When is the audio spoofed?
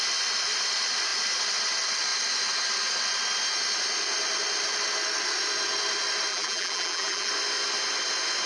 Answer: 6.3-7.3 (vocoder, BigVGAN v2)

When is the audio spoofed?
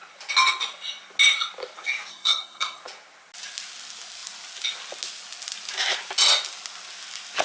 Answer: 2.1-2.8 (codec, SNAC)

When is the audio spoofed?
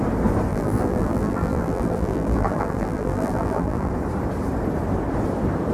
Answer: 0.5-3.9 (vocoder, BigVGAN v2)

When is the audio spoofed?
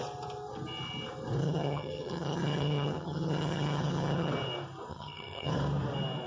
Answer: 1.4-4.3 (vocoder, HiFi-GAN); 4.9-5.5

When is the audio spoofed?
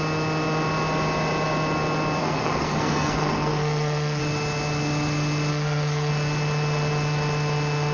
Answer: 2.2-4.2 (codec, SNAC); 5.5-6.1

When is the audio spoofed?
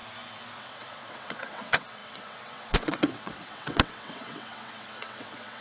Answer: 0.6-5.6 (vocoder, WaveNeXt)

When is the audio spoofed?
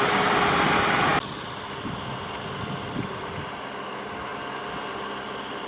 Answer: none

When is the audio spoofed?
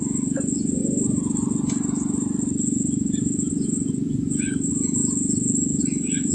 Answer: 0.0-0.8 (vocoder, Vocos); 3.5-5.0; 5.8-6.3